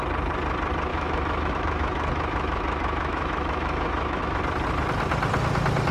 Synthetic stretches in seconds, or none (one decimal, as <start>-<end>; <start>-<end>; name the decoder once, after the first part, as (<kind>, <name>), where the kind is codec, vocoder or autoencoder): 0.9-4.4 (autoencoder, DAC-VAE)